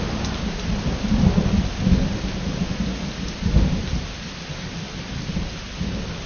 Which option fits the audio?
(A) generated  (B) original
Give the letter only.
B